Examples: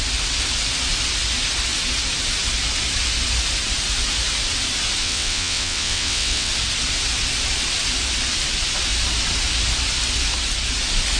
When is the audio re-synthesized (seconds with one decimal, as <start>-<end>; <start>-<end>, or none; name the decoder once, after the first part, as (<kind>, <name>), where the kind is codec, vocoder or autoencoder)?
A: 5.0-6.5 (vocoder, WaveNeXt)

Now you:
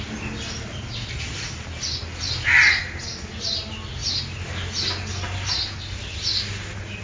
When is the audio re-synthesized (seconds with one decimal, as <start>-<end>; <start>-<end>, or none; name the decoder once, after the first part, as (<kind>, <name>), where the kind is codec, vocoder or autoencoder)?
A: none

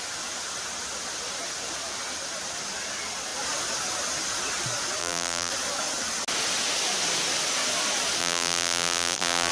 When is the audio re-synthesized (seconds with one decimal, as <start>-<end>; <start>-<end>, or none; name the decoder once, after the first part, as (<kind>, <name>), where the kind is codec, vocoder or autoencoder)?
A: 5.0-5.5 (vocoder, BigVGAN v2); 8.2-9.5

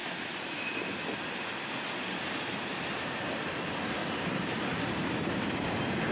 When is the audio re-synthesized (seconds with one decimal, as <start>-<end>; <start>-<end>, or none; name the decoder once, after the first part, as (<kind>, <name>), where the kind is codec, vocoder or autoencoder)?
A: 0.0-1.3 (vocoder, BigVGAN v2); 4.0-6.1